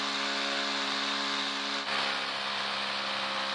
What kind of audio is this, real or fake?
real